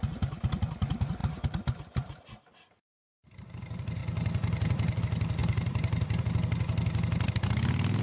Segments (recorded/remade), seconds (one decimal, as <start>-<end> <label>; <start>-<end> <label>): 0.0-1.2 recorded; 1.2-2.2 remade; 2.2-4.0 recorded; 4.0-5.0 remade; 5.0-5.4 recorded; 5.4-6.2 remade; 6.2-8.0 recorded